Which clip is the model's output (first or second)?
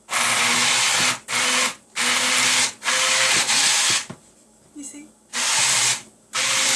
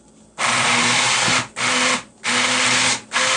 second